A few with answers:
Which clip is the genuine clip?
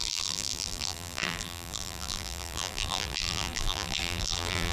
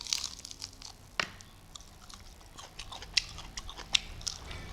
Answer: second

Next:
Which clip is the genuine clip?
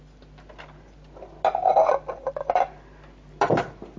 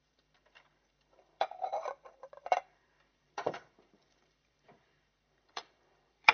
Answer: first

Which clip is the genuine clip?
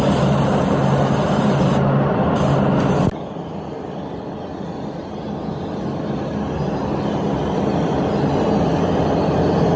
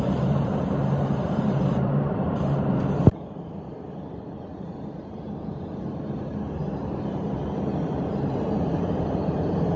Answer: first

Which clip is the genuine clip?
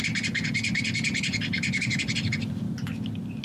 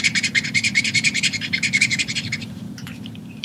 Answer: first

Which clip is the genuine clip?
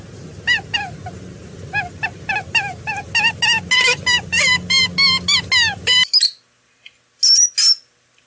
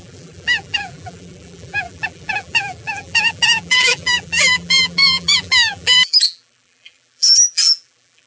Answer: first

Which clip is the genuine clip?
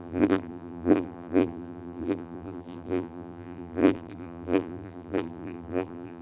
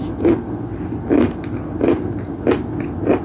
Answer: second